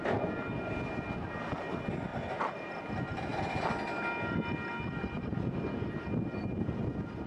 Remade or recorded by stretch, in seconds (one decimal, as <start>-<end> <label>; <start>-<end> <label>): 0.0-7.3 recorded